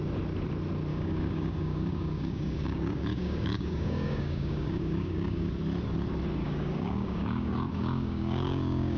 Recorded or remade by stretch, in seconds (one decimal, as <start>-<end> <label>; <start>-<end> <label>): 0.0-0.9 recorded; 0.9-5.5 remade; 5.5-6.4 recorded; 6.4-9.0 remade